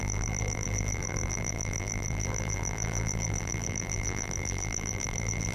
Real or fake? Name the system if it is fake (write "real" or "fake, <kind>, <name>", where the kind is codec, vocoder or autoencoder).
fake, vocoder, BigVGAN v2